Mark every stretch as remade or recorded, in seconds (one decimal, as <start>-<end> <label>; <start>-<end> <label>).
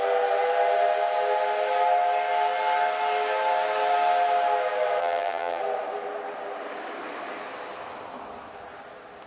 0.0-5.0 recorded; 5.0-5.6 remade; 5.6-9.3 recorded